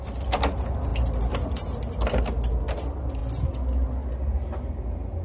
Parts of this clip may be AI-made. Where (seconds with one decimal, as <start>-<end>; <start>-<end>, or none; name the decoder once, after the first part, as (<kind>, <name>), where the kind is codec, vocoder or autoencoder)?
none